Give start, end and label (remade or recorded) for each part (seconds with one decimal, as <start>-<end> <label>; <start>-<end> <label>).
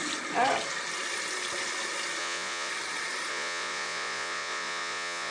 0.0-2.2 recorded; 2.2-2.7 remade; 2.7-3.3 recorded; 3.3-5.3 remade